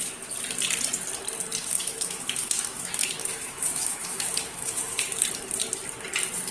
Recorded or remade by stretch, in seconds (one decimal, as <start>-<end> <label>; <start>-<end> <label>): 0.0-1.6 recorded; 1.6-5.2 remade; 5.2-6.5 recorded